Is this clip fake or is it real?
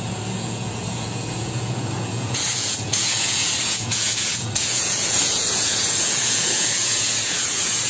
fake